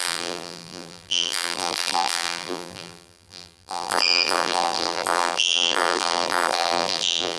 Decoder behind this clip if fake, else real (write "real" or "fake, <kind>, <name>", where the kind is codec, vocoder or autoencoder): fake, vocoder, BigVGAN v2